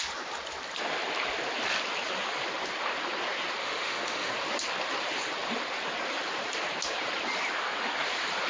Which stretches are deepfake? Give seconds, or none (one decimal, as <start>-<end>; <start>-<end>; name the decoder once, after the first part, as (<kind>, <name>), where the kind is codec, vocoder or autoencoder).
3.6-4.3 (autoencoder, DAC-VAE)